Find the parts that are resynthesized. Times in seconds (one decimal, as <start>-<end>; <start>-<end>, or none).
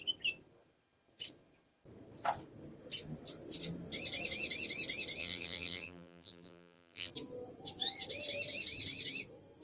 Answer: 5.2-7.1